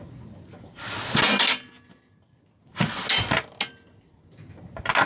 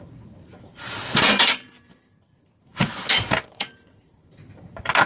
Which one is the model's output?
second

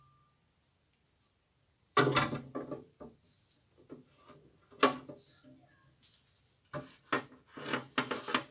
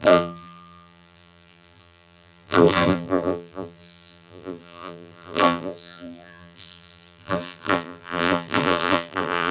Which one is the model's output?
second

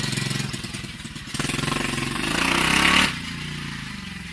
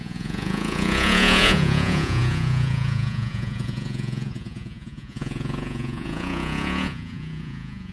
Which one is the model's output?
second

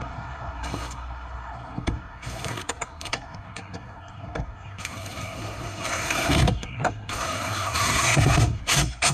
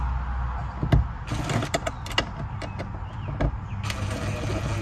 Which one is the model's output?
first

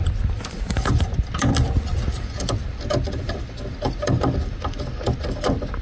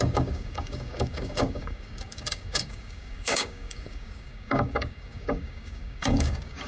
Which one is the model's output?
second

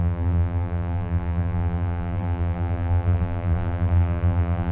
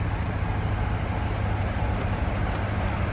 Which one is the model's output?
first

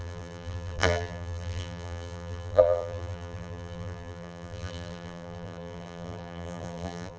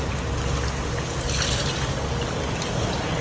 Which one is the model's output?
first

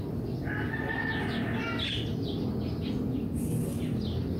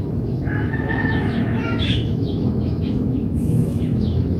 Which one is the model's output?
second